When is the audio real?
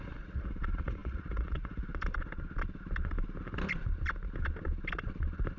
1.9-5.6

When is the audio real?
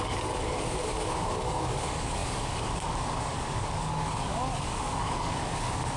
none